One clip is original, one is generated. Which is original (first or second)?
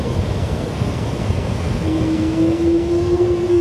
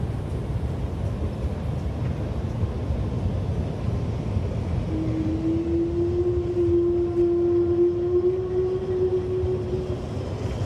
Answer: second